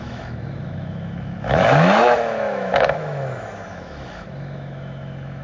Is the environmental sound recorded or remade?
remade